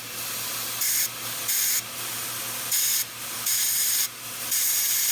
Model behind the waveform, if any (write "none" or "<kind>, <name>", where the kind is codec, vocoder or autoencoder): none